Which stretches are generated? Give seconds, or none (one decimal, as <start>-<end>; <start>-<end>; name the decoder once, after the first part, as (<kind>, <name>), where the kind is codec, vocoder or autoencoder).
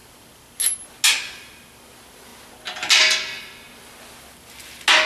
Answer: none